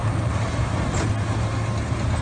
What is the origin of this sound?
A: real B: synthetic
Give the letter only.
A